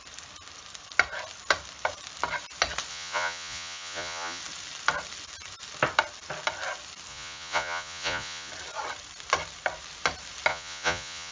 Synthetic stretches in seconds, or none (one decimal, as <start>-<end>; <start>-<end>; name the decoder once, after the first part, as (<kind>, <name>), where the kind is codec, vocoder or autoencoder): 2.9-4.4 (vocoder, Vocos); 7.1-8.5; 10.5-11.3